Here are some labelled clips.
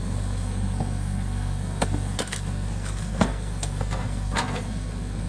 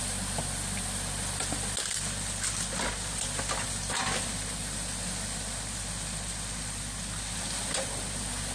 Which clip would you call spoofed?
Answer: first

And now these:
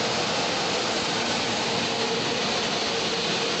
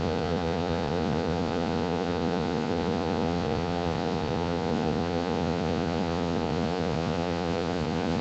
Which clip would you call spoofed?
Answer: second